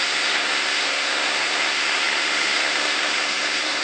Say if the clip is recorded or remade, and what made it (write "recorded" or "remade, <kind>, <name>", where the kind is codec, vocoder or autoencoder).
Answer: remade, codec, SNAC